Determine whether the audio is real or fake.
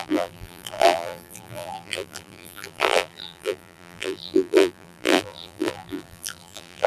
fake